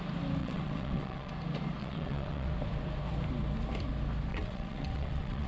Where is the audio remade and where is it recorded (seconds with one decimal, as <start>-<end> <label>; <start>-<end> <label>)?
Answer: 0.0-0.4 recorded; 0.4-1.3 remade; 1.3-1.8 recorded; 1.8-2.5 remade; 2.5-4.3 recorded; 4.3-5.5 remade